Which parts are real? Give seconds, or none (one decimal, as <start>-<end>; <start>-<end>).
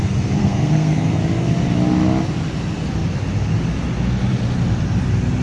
0.0-0.4; 1.2-5.4